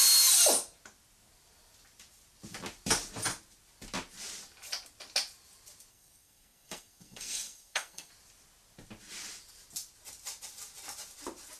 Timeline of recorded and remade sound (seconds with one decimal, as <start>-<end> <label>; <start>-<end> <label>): 0.0-5.9 recorded; 5.9-8.1 remade; 8.1-11.6 recorded